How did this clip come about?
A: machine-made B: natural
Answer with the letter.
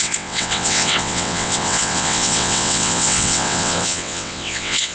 A